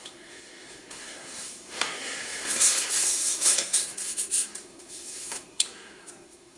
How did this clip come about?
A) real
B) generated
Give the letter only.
B